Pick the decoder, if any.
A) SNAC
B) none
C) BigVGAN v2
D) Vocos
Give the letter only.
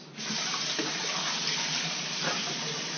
B